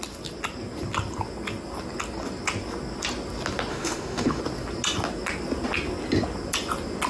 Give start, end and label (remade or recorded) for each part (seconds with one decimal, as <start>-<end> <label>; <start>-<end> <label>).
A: 0.0-3.7 recorded; 3.7-4.4 remade; 4.4-7.1 recorded